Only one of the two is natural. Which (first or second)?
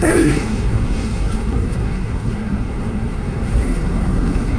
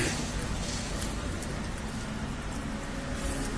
second